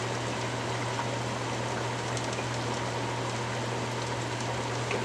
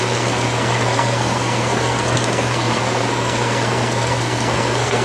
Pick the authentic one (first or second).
first